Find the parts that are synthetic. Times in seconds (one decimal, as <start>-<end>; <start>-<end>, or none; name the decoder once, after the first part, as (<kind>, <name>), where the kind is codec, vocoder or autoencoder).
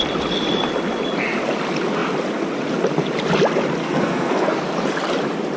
3.8-4.6 (codec, SNAC)